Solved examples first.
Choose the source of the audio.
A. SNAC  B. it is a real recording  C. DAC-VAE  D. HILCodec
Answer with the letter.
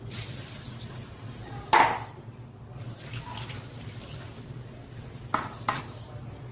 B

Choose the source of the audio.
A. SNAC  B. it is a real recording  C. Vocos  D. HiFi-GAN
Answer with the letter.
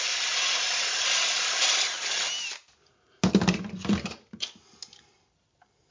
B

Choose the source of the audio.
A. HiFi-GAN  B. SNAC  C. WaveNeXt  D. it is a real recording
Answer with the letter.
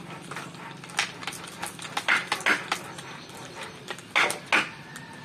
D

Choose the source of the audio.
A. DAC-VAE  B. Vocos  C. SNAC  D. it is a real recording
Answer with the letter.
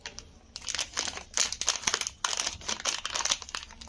D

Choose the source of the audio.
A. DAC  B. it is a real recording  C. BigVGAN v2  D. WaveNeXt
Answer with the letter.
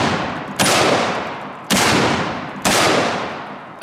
B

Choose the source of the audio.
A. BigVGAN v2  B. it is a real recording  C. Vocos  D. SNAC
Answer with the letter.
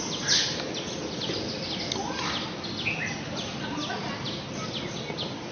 B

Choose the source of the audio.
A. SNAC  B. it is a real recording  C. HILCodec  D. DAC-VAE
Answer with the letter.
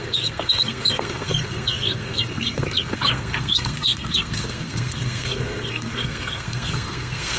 A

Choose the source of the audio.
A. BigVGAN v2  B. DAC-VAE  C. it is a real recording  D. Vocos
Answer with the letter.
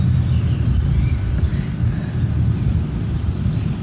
C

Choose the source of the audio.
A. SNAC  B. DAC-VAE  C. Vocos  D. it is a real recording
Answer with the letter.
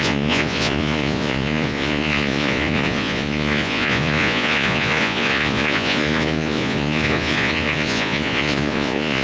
C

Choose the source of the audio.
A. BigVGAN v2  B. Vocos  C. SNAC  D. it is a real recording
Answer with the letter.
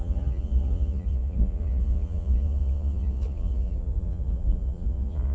B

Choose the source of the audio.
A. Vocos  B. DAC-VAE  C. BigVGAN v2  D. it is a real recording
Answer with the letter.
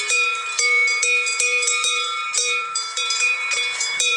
C